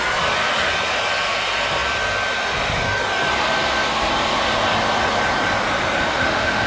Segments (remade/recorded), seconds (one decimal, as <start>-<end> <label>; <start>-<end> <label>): 0.0-6.1 recorded; 6.1-6.7 remade